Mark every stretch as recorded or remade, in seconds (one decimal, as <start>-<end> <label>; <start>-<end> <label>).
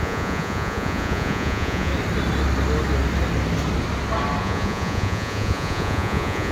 0.0-1.9 remade; 1.9-4.4 recorded; 4.4-6.5 remade